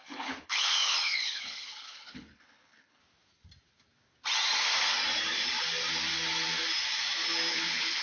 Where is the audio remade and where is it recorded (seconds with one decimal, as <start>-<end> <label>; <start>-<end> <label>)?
0.0-3.0 remade; 3.0-7.5 recorded; 7.5-8.0 remade